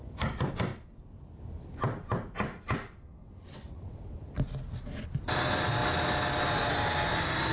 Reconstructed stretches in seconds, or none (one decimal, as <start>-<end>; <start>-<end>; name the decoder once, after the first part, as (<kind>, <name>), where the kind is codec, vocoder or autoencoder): 3.2-4.0 (vocoder, WaveNeXt)